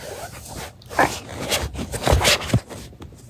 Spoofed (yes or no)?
no